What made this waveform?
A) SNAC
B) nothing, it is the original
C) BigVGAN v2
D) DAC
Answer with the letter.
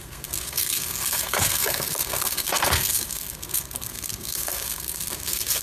A